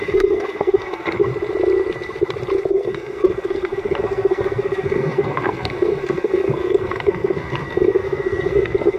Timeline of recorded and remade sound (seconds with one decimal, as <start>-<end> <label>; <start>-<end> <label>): 0.0-1.3 remade; 1.3-2.7 recorded; 2.7-9.0 remade